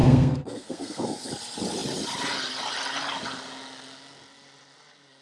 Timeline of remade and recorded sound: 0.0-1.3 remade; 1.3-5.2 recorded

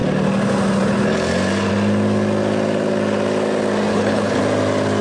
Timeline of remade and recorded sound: 0.0-3.9 recorded; 3.9-4.4 remade; 4.4-5.0 recorded